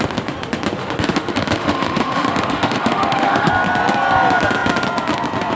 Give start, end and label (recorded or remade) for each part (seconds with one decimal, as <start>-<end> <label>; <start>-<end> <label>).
0.0-0.8 recorded; 0.8-3.5 remade; 3.5-5.6 recorded